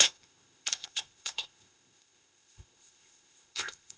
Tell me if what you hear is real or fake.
fake